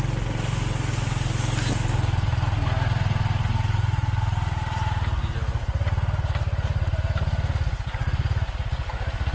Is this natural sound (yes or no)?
yes